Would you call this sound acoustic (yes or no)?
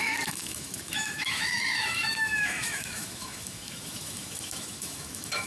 no